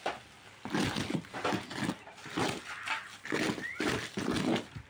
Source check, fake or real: real